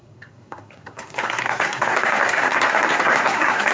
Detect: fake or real fake